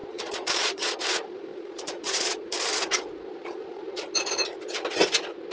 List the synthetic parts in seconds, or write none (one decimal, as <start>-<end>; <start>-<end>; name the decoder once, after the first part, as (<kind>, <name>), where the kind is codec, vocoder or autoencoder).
0.0-1.0 (vocoder, Vocos); 1.5-2.5; 3.4-4.0